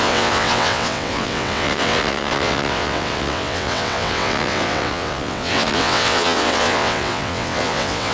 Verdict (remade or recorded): remade